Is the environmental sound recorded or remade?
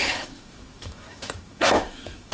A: remade